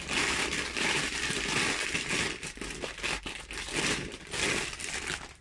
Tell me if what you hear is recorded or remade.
recorded